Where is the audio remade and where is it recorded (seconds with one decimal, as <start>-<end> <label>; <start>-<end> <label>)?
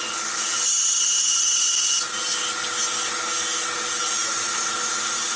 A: 0.0-5.4 recorded